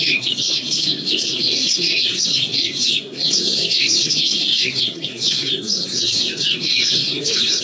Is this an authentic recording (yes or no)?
no